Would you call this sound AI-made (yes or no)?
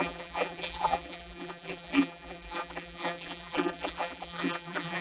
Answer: yes